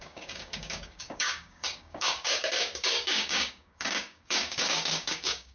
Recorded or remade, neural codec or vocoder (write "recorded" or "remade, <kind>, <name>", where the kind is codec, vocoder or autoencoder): remade, codec, DAC